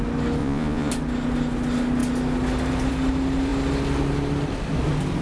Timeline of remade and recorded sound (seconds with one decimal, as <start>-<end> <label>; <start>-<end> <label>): 0.0-0.4 recorded; 0.4-0.9 remade; 0.9-5.2 recorded